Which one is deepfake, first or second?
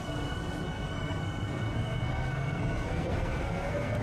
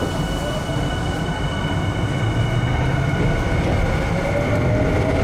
first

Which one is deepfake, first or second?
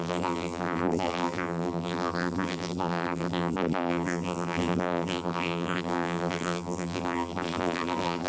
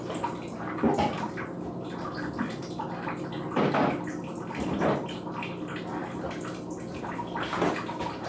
first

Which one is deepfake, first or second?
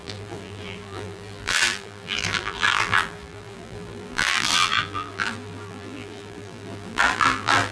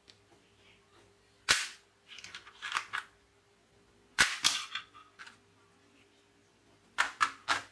first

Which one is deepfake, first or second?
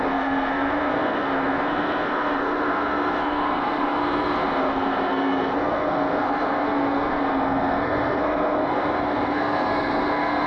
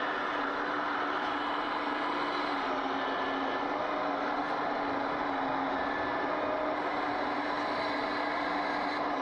first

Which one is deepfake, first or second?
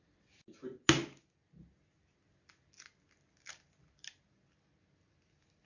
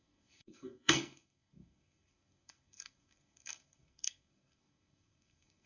second